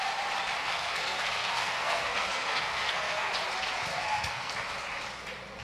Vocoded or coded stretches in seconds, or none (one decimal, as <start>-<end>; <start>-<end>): 0.6-3.3; 3.9-4.5